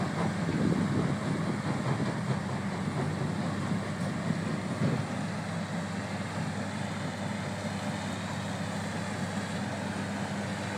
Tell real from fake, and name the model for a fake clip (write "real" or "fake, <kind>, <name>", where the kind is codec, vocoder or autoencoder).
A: real